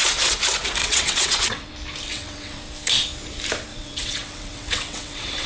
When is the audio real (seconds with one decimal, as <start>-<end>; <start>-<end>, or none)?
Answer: 0.0-0.8; 1.7-2.1; 2.6-3.7